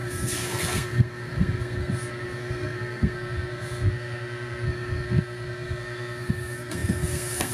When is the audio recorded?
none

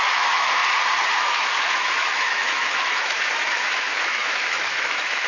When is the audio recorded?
0.6-1.1

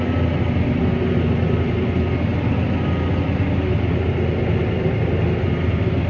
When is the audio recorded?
0.0-6.1

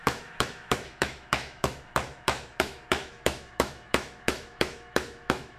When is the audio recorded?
none